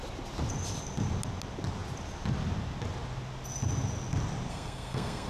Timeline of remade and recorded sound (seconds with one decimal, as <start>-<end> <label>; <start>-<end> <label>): 0.0-4.5 recorded; 4.5-5.3 remade

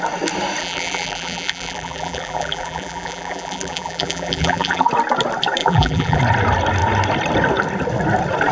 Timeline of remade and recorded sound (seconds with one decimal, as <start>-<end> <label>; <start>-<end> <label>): 0.0-0.6 recorded; 0.6-4.9 remade; 4.9-5.6 recorded; 5.6-6.2 remade; 6.2-8.5 recorded

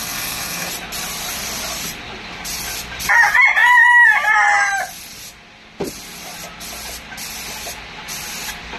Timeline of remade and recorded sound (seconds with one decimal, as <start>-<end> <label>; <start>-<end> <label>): 0.0-0.7 remade; 0.7-8.8 recorded

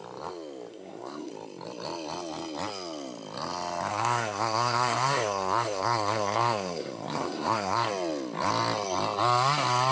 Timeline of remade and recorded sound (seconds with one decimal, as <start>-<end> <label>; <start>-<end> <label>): 0.0-0.7 recorded; 0.7-1.3 remade; 1.3-3.9 recorded; 3.9-7.9 remade; 7.9-9.9 recorded

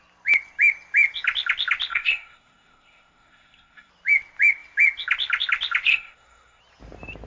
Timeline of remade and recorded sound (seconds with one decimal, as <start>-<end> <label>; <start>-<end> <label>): 0.0-1.9 recorded; 1.9-3.9 remade; 3.9-5.9 recorded; 5.9-6.6 remade; 6.6-7.3 recorded

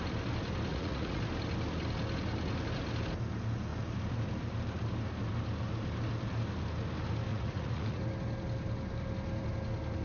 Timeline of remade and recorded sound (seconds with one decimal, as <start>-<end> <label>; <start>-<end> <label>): 0.0-0.7 recorded; 0.7-1.2 remade; 1.2-7.3 recorded; 7.3-8.0 remade; 8.0-10.0 recorded

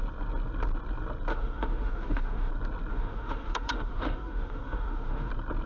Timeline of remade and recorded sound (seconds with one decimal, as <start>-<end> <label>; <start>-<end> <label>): 0.0-1.3 recorded; 1.3-2.5 remade; 2.5-2.9 recorded; 2.9-5.3 remade; 5.3-5.7 recorded

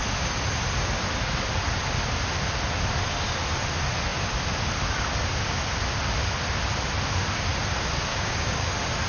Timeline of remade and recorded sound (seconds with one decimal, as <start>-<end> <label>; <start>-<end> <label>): 0.0-8.1 recorded; 8.1-8.7 remade; 8.7-9.1 recorded